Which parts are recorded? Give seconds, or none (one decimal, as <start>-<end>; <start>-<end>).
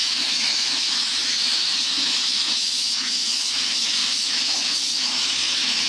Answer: none